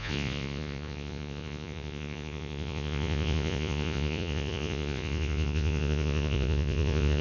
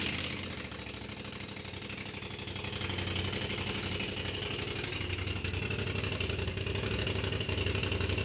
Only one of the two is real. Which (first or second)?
second